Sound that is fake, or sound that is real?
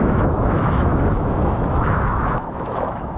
fake